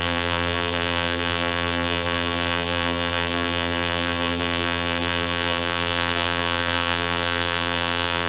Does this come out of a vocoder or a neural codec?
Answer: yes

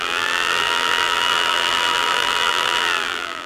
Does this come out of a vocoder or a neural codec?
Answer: yes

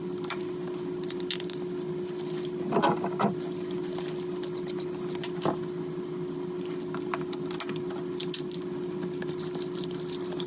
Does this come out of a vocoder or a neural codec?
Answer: no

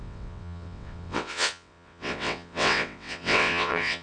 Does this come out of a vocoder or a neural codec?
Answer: yes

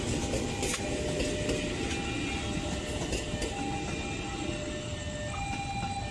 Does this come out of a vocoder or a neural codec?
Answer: no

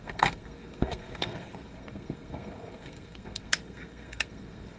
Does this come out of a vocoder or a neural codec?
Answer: yes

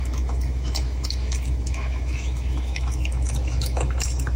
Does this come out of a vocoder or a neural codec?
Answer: yes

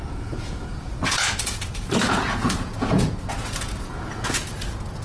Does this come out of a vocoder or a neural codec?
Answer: yes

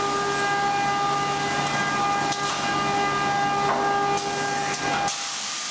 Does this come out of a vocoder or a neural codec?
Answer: no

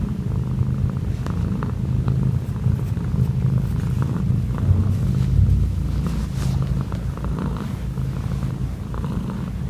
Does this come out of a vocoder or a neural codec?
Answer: no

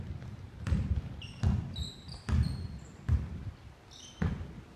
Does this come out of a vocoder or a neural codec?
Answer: no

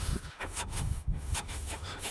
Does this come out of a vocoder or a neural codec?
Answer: yes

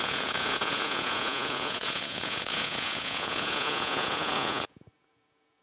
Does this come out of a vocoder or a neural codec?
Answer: yes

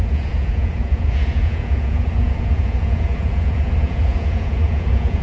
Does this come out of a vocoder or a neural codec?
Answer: yes